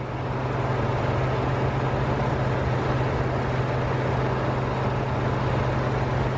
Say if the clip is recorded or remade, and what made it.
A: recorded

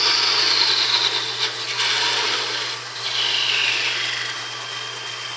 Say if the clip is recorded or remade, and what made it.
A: recorded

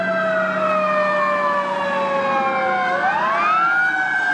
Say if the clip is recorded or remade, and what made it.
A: recorded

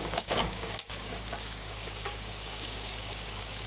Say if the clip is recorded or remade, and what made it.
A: remade, codec, DAC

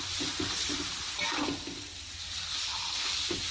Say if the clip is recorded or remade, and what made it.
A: recorded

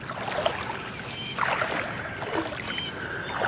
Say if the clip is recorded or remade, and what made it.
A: recorded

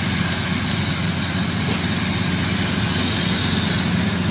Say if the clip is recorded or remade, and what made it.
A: recorded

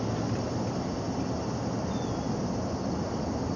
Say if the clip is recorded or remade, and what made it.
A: recorded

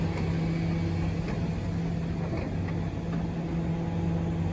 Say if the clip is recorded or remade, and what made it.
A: recorded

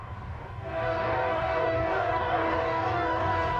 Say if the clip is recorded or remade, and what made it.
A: remade, codec, DAC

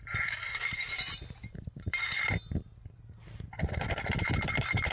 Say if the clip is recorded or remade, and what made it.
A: remade, vocoder, BigVGAN v2